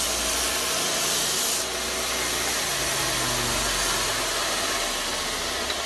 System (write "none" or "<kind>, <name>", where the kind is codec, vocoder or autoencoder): none